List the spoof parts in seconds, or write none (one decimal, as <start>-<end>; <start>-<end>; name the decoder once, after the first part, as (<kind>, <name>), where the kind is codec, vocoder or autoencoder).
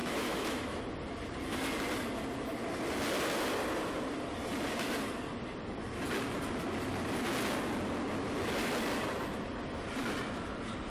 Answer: 0.0-0.8 (autoencoder, DAC-VAE)